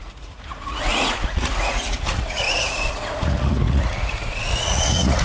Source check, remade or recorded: remade